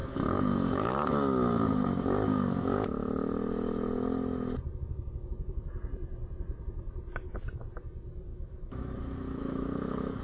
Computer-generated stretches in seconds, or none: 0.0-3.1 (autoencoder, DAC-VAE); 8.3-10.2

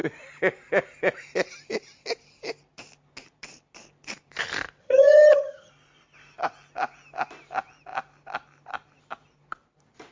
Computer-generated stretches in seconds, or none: 4.8-5.7 (vocoder, HiFi-GAN)